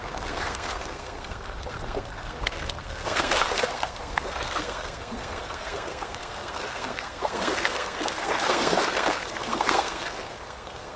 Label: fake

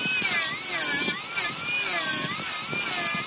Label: real